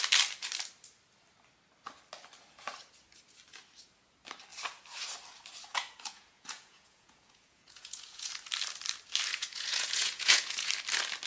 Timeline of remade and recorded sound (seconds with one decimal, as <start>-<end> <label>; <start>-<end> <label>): 0.0-5.7 recorded; 5.7-8.3 remade; 8.3-9.3 recorded; 9.3-10.7 remade; 10.7-11.3 recorded